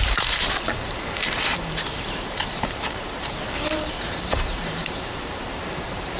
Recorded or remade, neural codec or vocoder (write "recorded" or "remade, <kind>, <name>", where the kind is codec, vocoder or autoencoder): remade, vocoder, BigVGAN v2